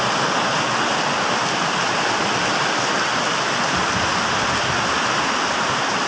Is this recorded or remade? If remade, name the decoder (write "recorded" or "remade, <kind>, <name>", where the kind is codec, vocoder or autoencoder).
recorded